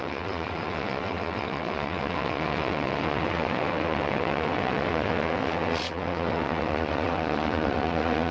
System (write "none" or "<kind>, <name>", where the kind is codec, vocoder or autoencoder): vocoder, WaveNeXt